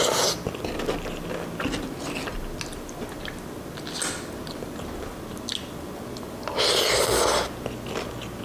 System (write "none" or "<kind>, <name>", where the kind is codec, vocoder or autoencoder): none